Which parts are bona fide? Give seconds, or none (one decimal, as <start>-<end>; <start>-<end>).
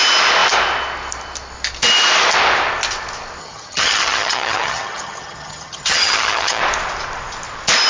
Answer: 0.0-3.4; 6.6-7.9